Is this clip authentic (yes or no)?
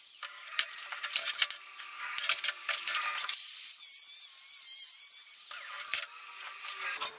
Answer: yes